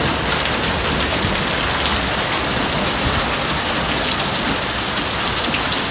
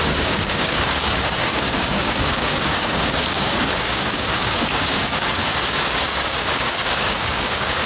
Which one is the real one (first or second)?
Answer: first